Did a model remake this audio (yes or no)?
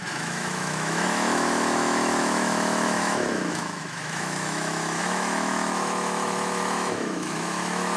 yes